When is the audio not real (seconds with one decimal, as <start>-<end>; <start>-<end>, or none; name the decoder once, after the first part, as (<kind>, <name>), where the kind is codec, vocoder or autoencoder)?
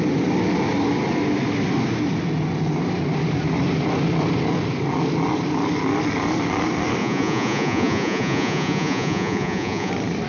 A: 7.0-9.9 (vocoder, Vocos)